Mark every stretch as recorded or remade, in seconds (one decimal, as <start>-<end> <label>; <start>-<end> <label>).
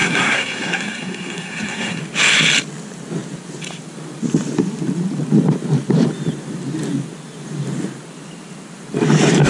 0.0-2.0 remade; 2.0-9.5 recorded